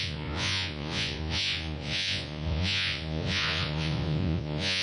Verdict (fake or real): fake